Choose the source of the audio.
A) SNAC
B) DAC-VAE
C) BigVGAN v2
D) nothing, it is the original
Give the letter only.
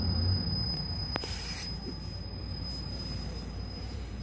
C